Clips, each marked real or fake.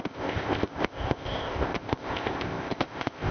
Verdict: fake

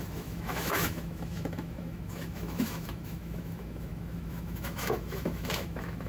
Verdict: fake